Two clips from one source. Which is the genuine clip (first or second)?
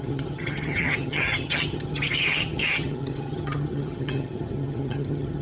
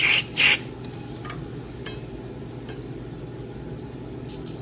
second